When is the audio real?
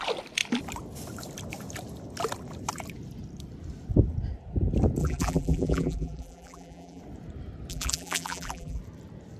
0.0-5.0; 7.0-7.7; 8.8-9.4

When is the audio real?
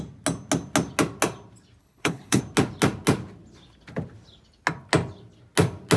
0.0-1.8; 2.4-6.0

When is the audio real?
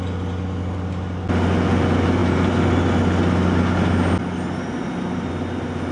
0.0-5.9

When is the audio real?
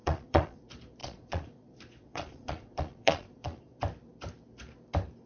0.6-1.0; 3.8-5.3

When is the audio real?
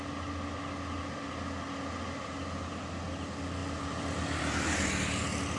0.0-5.6